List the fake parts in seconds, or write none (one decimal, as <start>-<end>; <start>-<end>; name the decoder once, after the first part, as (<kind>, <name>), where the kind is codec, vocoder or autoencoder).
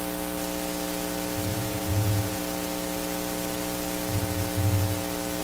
1.5-2.4 (vocoder, Vocos)